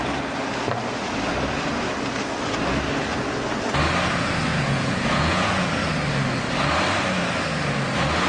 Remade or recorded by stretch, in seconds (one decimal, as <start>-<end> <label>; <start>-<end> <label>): 0.0-4.5 recorded; 4.5-5.7 remade; 5.7-8.3 recorded